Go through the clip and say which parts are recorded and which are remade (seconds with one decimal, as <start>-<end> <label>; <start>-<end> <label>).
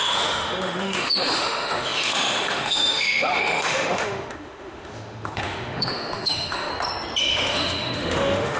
0.0-6.7 remade; 6.7-7.2 recorded; 7.2-8.6 remade